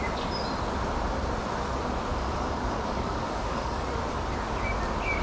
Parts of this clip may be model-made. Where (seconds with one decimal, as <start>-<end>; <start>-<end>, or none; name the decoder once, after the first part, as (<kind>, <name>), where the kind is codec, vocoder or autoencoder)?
2.1-3.8 (codec, DAC)